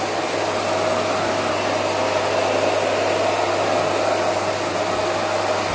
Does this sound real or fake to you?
real